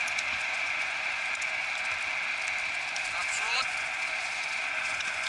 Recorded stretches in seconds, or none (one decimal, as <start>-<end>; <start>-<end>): 1.6-3.3